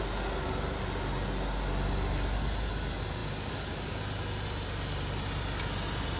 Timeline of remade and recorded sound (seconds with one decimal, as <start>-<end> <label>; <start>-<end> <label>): 0.0-6.2 recorded